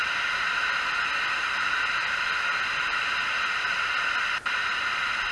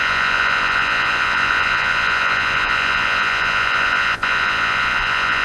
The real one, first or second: first